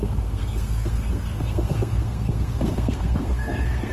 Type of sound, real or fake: fake